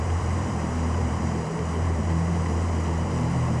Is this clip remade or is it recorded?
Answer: remade